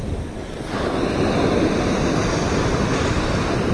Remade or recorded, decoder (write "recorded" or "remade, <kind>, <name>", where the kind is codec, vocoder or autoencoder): recorded